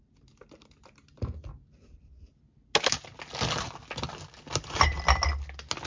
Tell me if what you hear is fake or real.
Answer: real